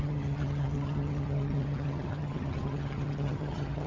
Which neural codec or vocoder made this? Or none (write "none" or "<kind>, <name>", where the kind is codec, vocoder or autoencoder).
vocoder, HiFi-GAN